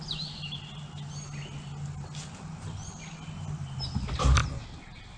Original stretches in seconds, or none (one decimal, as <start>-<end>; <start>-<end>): 0.0-5.2